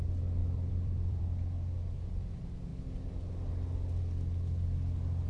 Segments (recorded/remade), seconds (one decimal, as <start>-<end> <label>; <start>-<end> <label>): 0.0-0.4 recorded; 0.4-1.2 remade; 1.2-5.3 recorded